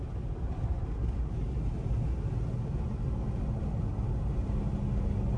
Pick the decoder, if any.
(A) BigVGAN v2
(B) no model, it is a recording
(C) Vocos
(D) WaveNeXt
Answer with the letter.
B